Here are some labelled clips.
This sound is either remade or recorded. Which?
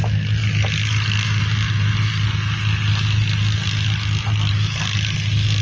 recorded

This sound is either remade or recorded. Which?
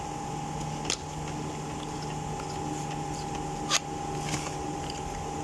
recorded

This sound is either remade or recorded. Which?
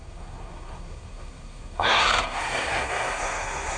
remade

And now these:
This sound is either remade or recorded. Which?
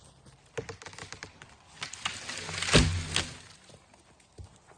recorded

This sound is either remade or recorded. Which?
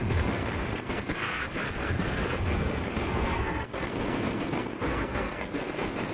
remade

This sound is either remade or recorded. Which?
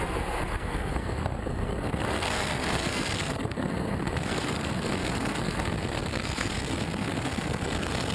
remade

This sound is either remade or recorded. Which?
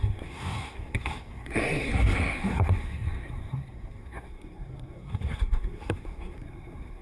remade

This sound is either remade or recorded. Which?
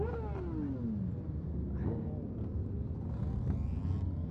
recorded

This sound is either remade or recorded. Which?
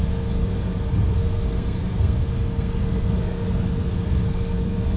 remade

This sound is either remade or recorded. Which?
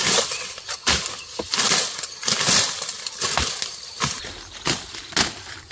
recorded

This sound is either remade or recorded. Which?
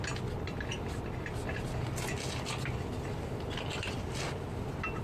recorded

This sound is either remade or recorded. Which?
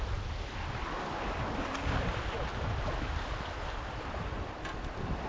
recorded